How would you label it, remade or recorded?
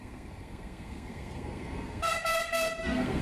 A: remade